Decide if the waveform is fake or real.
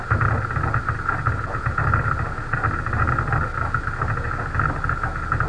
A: real